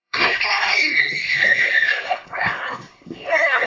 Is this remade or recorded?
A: remade